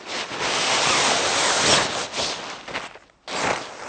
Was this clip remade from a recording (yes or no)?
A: no